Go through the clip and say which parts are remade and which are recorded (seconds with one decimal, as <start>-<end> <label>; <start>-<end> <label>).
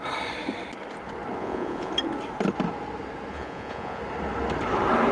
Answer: 0.0-1.4 recorded; 1.4-1.9 remade; 1.9-3.3 recorded; 3.3-4.0 remade; 4.0-5.1 recorded